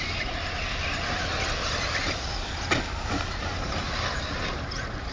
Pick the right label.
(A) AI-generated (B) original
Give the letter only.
B